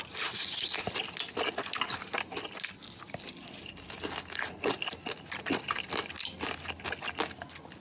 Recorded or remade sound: recorded